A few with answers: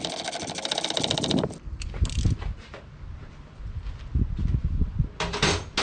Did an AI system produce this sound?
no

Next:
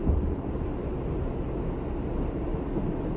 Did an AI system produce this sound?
no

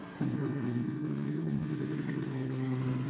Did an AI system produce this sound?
yes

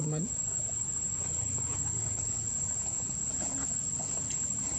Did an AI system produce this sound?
yes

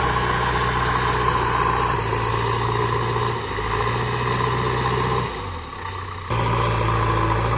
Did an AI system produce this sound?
no